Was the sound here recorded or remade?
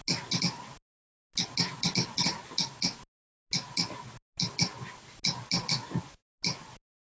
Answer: recorded